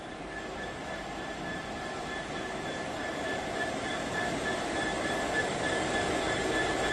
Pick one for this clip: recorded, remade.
recorded